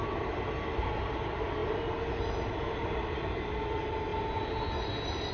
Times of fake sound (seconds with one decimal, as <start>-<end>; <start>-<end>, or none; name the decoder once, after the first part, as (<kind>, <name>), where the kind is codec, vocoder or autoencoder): none